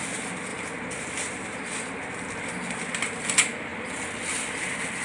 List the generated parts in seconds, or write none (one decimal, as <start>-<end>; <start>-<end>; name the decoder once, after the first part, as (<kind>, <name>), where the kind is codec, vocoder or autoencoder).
none